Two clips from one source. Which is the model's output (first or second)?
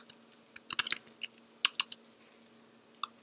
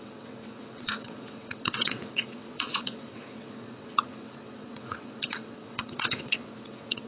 second